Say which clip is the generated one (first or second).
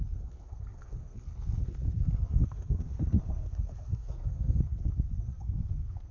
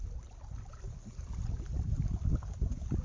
first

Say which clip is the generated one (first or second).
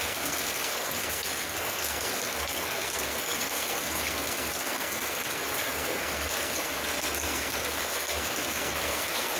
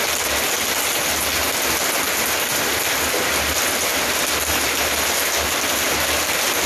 first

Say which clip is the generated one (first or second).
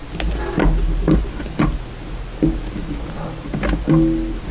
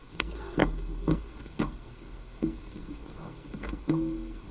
second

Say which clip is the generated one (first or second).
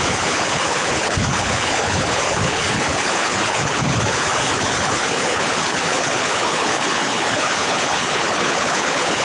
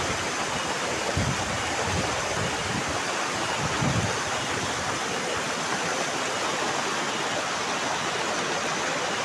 first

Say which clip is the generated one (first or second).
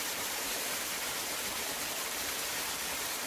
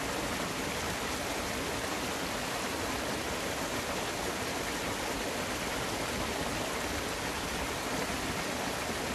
first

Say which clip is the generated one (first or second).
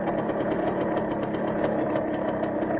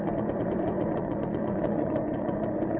second